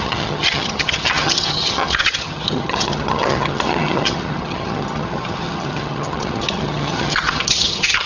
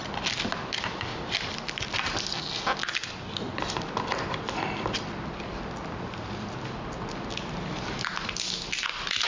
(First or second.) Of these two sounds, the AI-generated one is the first